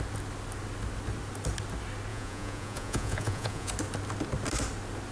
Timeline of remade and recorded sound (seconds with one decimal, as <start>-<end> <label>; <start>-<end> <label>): 0.0-2.1 recorded; 2.1-3.7 remade; 3.7-5.1 recorded